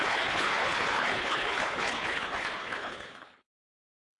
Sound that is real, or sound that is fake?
fake